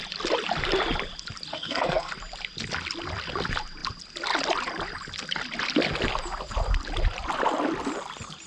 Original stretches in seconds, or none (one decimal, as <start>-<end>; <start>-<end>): 0.0-1.5; 2.1-8.5